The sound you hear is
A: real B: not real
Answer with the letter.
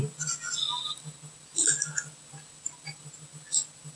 A